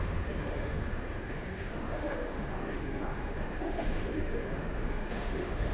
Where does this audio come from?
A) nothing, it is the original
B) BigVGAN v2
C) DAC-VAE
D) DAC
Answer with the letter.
C